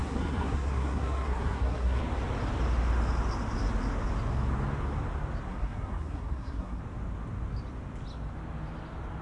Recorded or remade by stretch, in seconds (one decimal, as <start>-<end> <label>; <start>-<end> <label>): 0.0-2.0 remade; 2.0-5.5 recorded; 5.5-6.8 remade; 6.8-9.2 recorded